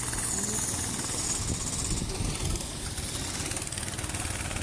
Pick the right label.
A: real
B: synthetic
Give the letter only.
A